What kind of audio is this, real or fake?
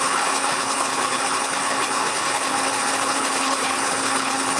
fake